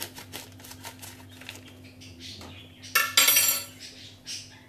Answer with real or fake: real